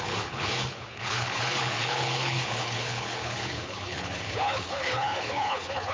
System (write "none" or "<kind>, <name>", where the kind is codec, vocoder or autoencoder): codec, HILCodec